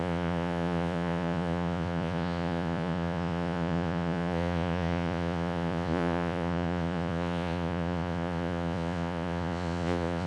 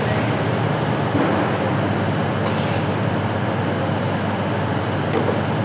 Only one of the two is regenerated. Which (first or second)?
first